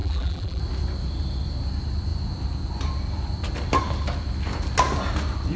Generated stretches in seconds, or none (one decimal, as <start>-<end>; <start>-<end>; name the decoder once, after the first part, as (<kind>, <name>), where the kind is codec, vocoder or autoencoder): 0.0-0.6 (vocoder, BigVGAN v2)